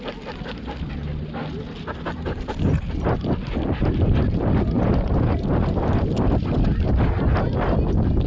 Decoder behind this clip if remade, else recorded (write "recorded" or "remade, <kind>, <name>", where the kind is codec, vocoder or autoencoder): recorded